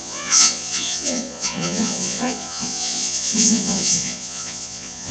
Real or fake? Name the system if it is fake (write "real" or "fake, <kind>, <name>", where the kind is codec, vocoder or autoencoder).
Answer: fake, vocoder, Vocos